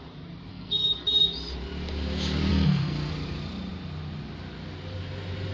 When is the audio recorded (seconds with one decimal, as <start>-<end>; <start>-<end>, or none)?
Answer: 0.0-0.5; 1.1-2.5; 3.1-5.5